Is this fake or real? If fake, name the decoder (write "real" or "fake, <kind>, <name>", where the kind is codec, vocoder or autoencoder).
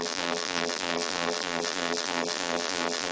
fake, vocoder, BigVGAN v2